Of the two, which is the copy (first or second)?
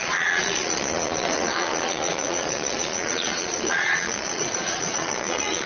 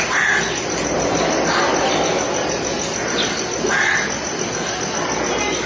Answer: first